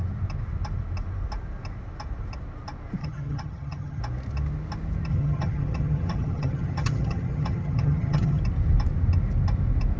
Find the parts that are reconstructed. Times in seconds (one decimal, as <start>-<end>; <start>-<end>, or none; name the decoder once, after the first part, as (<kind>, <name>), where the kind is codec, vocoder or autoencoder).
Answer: 3.0-4.0 (vocoder, HiFi-GAN); 5.1-8.4

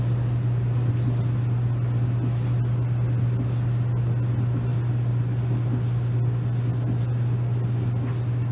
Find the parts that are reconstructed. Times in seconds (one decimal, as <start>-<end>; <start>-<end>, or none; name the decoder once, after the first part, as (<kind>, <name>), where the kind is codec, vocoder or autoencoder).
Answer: none

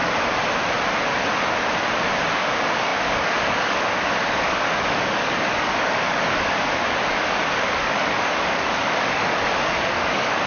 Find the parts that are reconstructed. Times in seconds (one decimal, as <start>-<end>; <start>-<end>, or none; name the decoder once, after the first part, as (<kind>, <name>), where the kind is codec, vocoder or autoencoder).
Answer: 2.3-10.5 (codec, DAC)

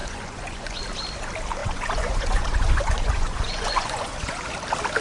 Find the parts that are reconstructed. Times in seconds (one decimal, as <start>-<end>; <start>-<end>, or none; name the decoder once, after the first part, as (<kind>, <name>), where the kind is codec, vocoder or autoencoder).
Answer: 0.0-0.8 (vocoder, Vocos); 1.6-4.4

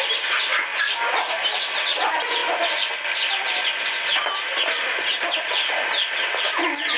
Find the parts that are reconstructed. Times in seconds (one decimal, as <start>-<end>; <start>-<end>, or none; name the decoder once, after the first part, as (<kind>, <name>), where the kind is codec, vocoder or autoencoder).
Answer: none

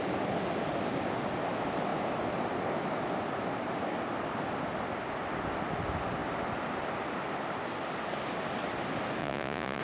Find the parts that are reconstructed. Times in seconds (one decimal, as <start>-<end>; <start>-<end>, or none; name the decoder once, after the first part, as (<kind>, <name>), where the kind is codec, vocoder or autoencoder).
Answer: 9.2-9.8 (vocoder, Vocos)

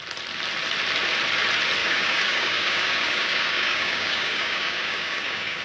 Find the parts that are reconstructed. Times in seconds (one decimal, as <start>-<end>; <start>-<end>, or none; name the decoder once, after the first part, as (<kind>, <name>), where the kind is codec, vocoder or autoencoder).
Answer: 1.8-5.6 (codec, DAC)

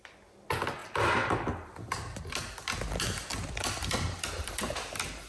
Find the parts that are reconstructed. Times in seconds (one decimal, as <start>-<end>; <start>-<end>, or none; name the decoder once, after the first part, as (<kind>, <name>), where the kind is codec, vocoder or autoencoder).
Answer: 0.8-2.3 (vocoder, BigVGAN v2); 3.3-5.3